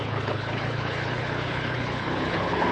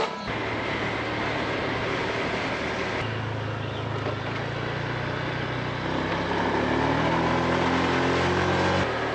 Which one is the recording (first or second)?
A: second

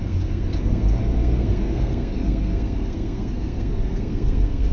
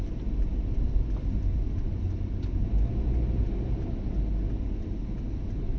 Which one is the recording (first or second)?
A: second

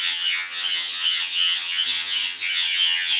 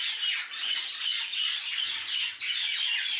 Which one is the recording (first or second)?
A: second